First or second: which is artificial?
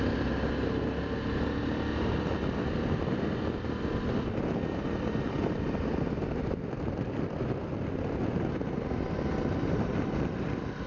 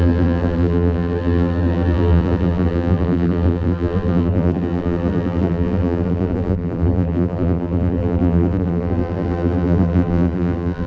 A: second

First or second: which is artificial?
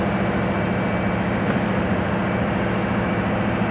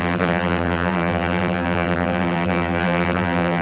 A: second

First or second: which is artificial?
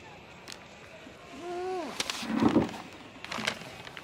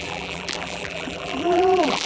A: second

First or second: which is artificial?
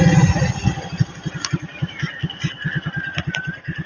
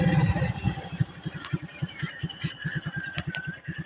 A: second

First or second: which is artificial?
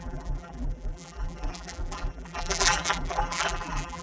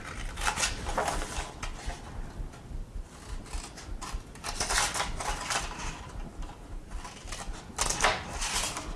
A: first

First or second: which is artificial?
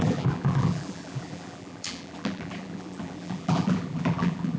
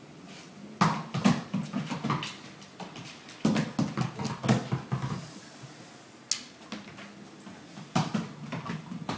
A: first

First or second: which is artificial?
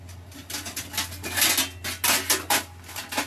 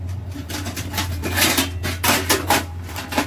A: second